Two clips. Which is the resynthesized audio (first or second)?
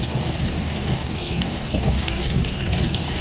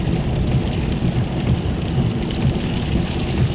first